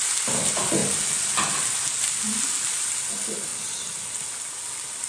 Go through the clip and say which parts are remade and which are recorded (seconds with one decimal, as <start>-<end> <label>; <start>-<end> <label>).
0.0-5.1 recorded